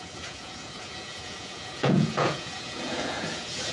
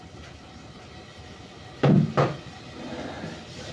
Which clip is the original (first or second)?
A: second